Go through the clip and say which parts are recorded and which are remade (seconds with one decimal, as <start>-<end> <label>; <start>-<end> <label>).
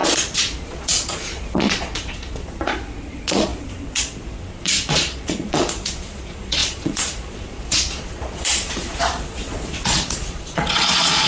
0.0-11.3 remade